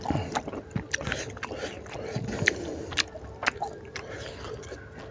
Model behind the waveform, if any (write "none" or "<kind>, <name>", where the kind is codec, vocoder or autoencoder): none